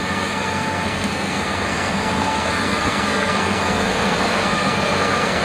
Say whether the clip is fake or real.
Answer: fake